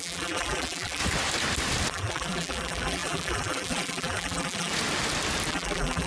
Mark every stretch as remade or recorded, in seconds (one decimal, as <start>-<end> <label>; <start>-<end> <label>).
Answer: 0.0-1.0 remade; 1.0-1.9 recorded; 1.9-4.7 remade; 4.7-5.5 recorded; 5.5-6.1 remade